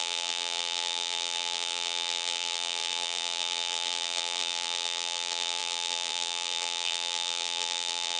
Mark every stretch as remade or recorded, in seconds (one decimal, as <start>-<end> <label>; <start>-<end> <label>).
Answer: 0.0-8.2 remade